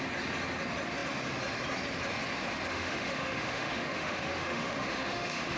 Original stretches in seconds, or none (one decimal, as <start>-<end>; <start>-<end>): 0.0-2.7